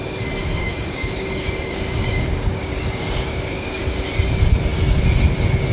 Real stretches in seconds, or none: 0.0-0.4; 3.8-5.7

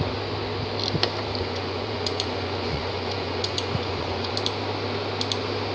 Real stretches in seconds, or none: 0.0-1.4; 4.3-5.7

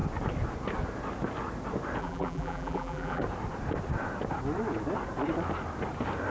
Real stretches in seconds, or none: 0.0-2.0; 3.2-6.3

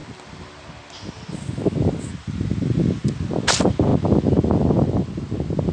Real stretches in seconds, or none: 1.6-2.1; 3.0-5.7

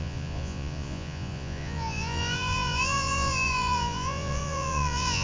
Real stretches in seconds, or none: none

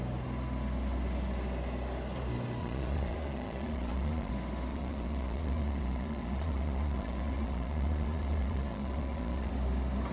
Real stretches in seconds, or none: 0.0-2.6; 4.3-4.7; 9.5-10.1